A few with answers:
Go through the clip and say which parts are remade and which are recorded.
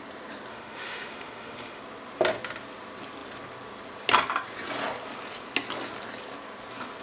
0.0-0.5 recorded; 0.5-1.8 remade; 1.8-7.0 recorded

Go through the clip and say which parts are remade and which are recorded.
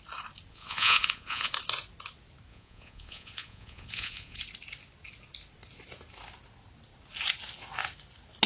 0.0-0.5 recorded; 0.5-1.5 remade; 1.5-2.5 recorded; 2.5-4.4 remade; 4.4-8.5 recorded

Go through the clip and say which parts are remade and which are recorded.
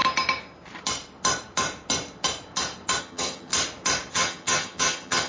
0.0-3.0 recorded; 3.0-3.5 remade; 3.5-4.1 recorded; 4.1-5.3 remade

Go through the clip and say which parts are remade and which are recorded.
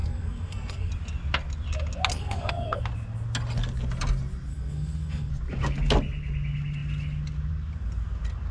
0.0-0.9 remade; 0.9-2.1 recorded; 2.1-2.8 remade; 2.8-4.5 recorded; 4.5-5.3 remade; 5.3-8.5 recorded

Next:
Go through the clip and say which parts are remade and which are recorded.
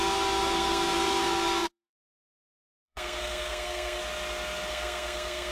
0.0-4.0 remade; 4.0-4.7 recorded; 4.7-5.5 remade